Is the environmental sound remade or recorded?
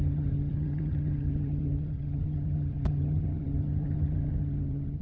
remade